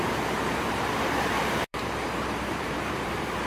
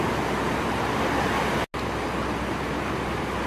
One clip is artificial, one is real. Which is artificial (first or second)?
first